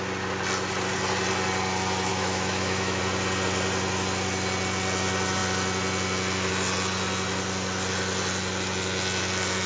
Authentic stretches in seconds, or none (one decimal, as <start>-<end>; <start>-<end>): 0.0-2.1; 3.0-9.7